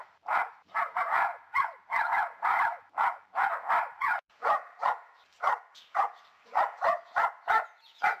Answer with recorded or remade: remade